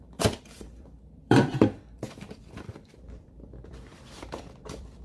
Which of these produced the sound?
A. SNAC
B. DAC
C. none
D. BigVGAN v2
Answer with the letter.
D